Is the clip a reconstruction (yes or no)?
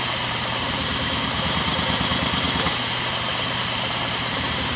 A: yes